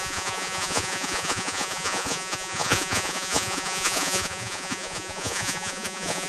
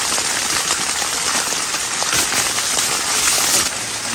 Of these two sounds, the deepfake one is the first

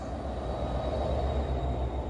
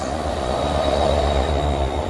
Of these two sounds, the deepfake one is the second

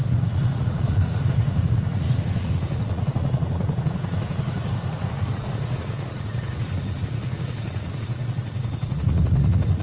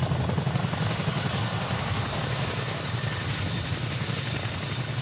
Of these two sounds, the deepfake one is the first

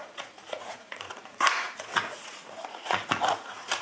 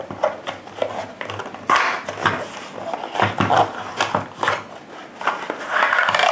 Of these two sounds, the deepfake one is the first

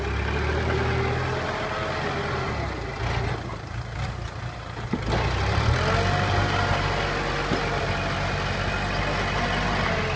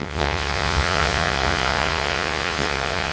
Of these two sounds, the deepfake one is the second